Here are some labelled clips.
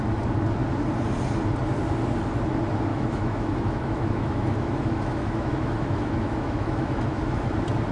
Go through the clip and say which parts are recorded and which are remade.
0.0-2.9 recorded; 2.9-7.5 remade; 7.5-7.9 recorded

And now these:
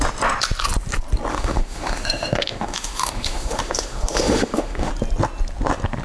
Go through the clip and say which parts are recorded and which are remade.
0.0-1.3 recorded; 1.3-4.9 remade; 4.9-6.0 recorded

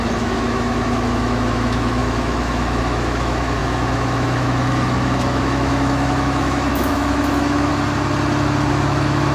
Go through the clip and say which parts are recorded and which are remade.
0.0-7.7 remade; 7.7-8.7 recorded; 8.7-9.3 remade